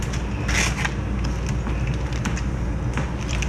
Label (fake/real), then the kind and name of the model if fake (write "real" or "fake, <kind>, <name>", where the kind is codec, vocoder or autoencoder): real